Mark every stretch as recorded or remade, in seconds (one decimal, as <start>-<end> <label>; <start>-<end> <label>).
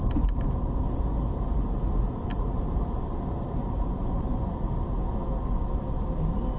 0.0-2.3 recorded; 2.3-4.5 remade; 4.5-6.6 recorded